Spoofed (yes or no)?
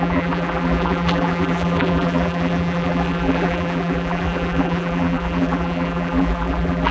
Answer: yes